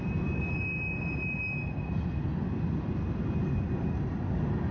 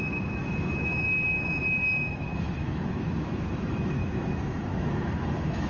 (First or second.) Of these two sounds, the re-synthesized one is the second